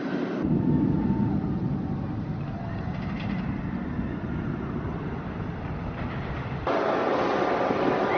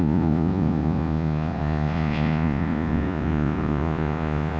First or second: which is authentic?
first